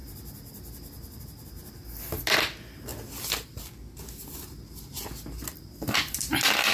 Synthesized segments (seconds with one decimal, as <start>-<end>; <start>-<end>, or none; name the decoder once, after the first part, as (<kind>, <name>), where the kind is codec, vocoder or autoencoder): none